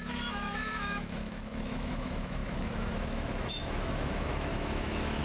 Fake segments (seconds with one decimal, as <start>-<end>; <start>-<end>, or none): 0.0-5.2